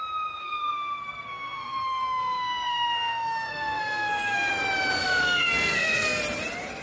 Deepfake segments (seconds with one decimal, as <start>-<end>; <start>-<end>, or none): 0.4-4.5; 5.0-6.2